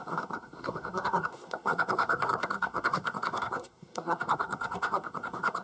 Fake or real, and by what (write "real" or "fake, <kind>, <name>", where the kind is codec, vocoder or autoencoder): fake, codec, SNAC